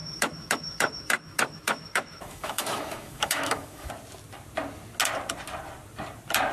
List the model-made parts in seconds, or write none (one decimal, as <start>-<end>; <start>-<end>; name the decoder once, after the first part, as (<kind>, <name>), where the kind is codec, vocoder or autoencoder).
0.0-3.9 (autoencoder, DAC-VAE)